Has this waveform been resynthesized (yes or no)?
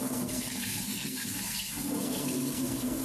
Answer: yes